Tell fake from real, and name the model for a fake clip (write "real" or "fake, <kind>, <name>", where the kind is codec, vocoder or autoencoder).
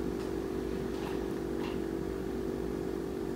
real